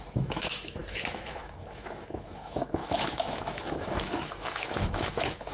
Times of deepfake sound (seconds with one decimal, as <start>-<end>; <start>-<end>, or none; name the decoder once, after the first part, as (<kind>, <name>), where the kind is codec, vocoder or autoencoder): 0.0-5.5 (autoencoder, DAC-VAE)